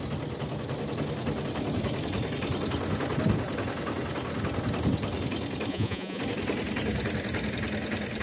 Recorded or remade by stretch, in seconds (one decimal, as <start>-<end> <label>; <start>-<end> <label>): 0.0-5.7 recorded; 5.7-6.2 remade; 6.2-8.2 recorded